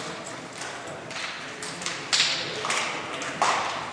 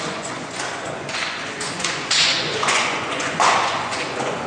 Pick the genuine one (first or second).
first